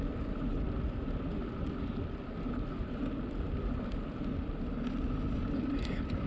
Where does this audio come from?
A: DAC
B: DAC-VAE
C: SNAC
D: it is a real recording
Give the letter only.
D